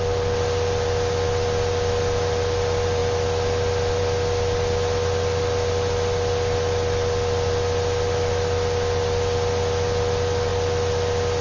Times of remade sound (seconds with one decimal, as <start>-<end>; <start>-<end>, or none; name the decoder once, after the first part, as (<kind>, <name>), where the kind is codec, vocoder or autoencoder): none